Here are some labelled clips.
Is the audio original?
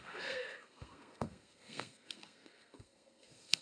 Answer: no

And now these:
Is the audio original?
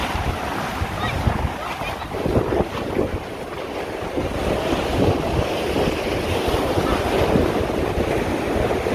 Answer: yes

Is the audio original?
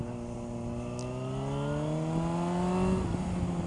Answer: yes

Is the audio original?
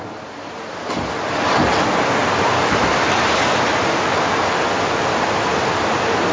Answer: yes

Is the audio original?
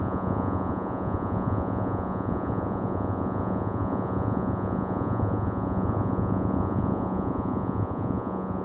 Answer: no